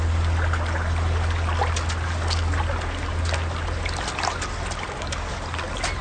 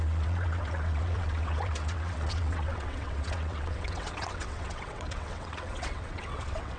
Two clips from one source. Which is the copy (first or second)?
second